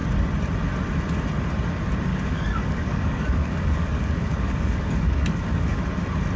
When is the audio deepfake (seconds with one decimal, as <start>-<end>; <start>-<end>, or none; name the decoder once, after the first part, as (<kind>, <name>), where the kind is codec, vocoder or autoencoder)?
2.1-5.8 (codec, DAC)